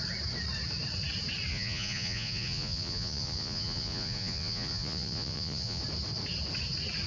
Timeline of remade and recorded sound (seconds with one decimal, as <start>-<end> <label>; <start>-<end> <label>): 0.0-1.5 recorded; 1.5-5.8 remade; 5.8-7.1 recorded